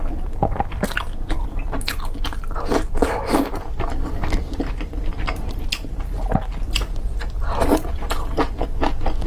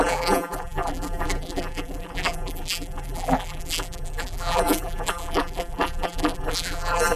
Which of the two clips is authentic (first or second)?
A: first